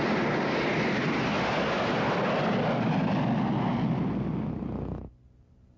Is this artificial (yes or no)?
no